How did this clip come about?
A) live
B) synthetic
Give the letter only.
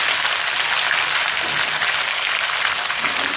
A